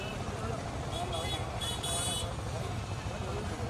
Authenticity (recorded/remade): recorded